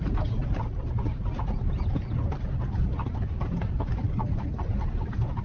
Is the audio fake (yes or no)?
no